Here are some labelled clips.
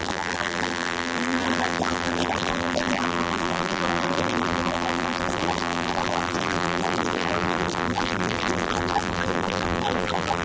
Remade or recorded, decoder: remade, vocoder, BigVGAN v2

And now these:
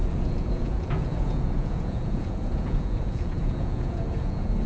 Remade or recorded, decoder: remade, vocoder, Vocos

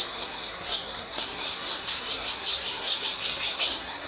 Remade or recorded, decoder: remade, codec, SNAC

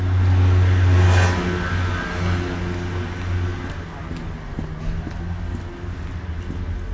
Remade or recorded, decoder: recorded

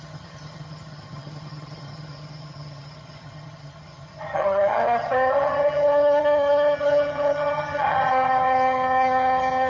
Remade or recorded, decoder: remade, vocoder, HiFi-GAN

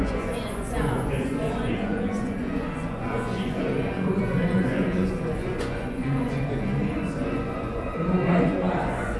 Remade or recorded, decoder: remade, vocoder, Vocos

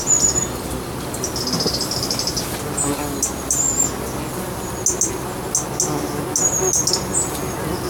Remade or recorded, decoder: recorded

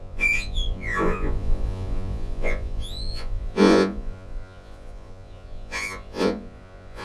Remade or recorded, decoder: remade, vocoder, Vocos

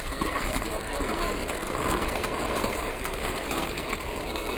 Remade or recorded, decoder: remade, codec, SNAC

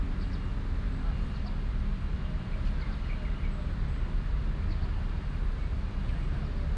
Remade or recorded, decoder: recorded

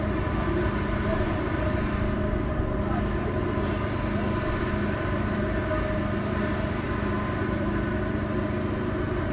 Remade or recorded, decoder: recorded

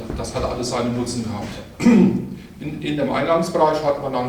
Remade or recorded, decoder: recorded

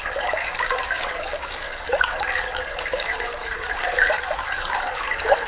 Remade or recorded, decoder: remade, codec, DAC